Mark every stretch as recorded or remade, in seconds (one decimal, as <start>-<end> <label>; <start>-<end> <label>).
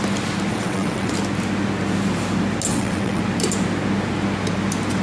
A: 0.0-0.5 recorded; 0.5-1.1 remade; 1.1-2.7 recorded; 2.7-3.2 remade; 3.2-5.0 recorded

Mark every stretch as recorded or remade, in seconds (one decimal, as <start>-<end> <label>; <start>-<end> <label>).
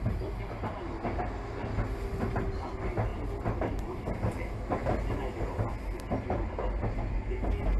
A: 0.0-7.8 recorded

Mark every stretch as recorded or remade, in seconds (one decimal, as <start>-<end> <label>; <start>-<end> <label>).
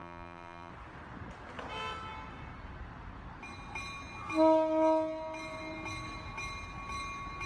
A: 0.0-0.7 remade; 0.7-7.5 recorded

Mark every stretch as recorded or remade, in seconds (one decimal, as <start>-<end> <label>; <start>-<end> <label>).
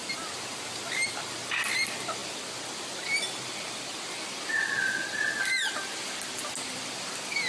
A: 0.0-7.5 recorded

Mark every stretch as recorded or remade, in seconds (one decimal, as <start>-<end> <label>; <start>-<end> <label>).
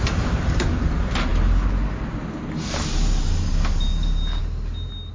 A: 0.0-5.1 recorded